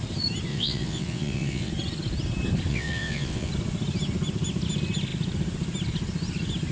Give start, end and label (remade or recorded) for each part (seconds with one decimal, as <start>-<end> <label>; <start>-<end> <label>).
0.0-0.5 recorded; 0.5-1.7 remade; 1.7-2.7 recorded; 2.7-3.5 remade; 3.5-6.7 recorded